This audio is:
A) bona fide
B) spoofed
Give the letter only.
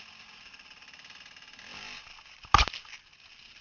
A